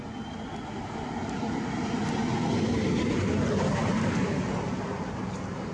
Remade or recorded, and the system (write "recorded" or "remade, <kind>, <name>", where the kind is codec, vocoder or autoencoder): recorded